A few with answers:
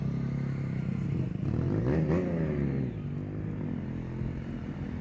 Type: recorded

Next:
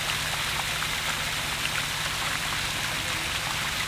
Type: recorded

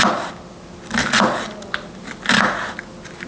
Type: recorded